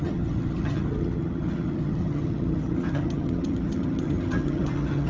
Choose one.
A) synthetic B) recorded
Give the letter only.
A